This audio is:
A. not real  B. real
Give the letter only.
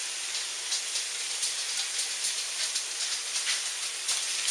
B